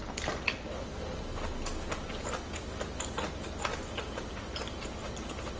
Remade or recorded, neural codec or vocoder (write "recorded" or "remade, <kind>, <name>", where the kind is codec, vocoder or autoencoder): recorded